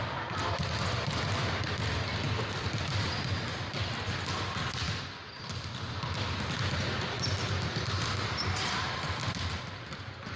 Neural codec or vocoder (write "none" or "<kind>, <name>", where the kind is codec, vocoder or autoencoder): none